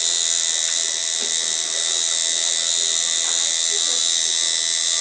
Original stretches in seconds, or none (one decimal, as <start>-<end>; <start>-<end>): 0.0-5.0